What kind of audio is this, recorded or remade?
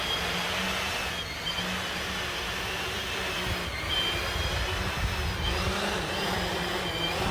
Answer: recorded